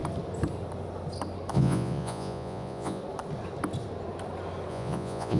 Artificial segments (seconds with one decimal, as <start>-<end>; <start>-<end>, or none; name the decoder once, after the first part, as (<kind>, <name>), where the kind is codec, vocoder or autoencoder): 1.5-3.0 (vocoder, Vocos); 4.7-5.4